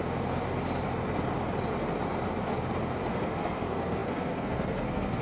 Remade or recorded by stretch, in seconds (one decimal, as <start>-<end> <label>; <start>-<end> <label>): 0.0-3.1 recorded; 3.1-5.2 remade